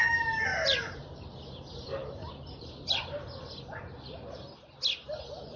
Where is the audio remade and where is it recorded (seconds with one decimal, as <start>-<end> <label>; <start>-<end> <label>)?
0.0-0.5 recorded; 0.5-1.1 remade; 1.1-2.0 recorded; 2.0-3.8 remade; 3.8-5.6 recorded